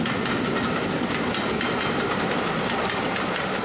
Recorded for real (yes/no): yes